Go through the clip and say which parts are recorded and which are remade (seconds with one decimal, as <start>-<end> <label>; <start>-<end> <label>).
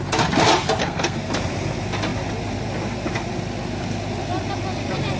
0.0-0.8 recorded; 0.8-1.3 remade; 1.3-5.2 recorded